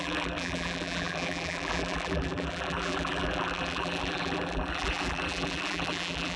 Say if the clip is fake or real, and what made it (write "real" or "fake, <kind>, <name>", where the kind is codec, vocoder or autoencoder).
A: fake, vocoder, BigVGAN v2